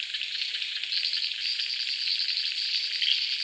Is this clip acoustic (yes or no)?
yes